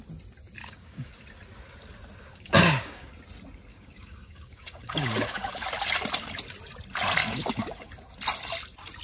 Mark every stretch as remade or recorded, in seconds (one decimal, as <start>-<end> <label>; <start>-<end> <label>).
0.0-0.6 recorded; 0.6-1.1 remade; 1.1-2.3 recorded; 2.3-3.1 remade; 3.1-3.7 recorded; 3.7-5.5 remade; 5.5-7.2 recorded; 7.2-7.9 remade; 7.9-9.0 recorded